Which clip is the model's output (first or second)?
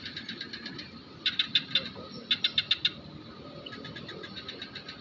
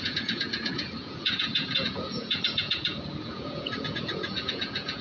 second